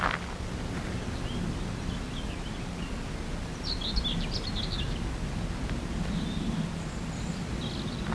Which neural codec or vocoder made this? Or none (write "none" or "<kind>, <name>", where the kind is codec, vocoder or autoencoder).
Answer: none